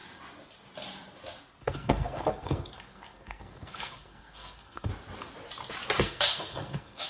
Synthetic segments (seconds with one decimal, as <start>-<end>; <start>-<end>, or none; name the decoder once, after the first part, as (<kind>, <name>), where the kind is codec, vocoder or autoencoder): 1.6-4.9 (codec, SNAC); 6.0-7.1